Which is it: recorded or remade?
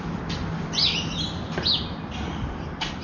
recorded